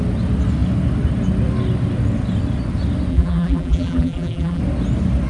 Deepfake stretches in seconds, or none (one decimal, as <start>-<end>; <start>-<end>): 3.1-4.6

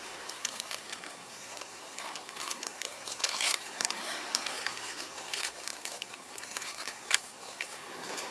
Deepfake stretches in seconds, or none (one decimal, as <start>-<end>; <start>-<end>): 0.0-8.3

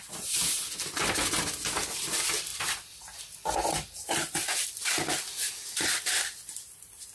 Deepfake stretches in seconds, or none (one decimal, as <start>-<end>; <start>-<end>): none

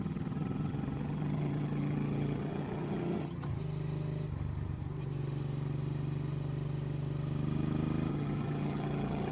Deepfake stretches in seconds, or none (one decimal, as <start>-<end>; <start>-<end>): 0.0-3.5; 8.1-9.3

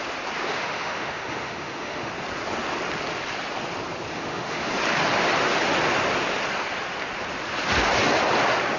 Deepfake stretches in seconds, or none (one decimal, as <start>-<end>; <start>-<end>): 0.5-2.1; 4.1-4.7

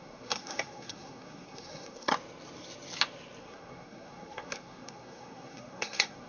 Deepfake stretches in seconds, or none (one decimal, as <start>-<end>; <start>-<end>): 0.0-2.1; 3.4-6.3

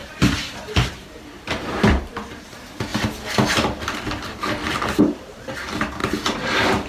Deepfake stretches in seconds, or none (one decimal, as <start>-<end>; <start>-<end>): 0.0-2.9; 5.0-6.0; 6.5-6.9